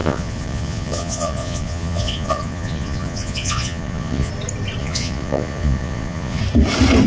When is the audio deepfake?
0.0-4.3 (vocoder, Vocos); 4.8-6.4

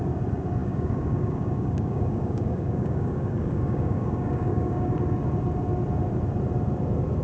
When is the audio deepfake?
0.6-4.9 (codec, DAC)

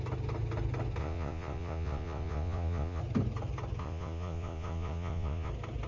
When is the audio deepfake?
1.0-3.0 (vocoder, Vocos); 3.8-5.5